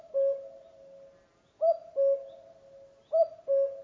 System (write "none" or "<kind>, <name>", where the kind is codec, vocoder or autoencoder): none